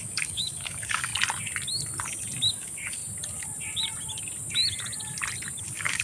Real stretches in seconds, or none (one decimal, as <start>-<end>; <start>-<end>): 1.1-2.5; 3.0-5.6